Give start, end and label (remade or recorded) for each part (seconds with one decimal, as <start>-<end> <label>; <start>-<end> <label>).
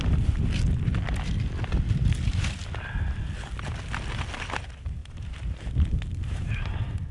0.0-5.0 recorded; 5.0-6.5 remade; 6.5-7.1 recorded